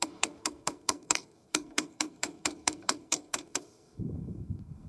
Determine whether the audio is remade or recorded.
remade